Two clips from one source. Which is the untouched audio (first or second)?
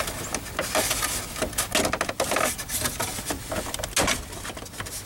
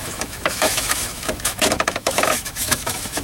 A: first